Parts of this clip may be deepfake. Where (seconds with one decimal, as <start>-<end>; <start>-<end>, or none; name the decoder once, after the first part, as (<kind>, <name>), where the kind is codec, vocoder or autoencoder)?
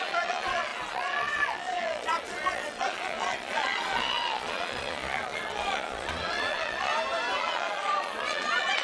0.0-6.9 (vocoder, Vocos); 7.4-8.8